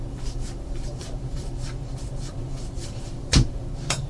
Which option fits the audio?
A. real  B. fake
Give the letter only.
B